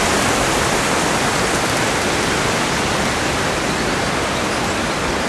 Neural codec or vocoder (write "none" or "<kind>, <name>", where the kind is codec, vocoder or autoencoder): vocoder, BigVGAN v2